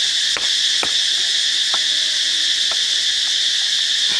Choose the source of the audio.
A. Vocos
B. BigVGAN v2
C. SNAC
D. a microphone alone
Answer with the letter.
D